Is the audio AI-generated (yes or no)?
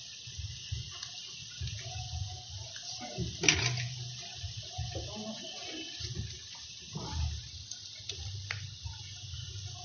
no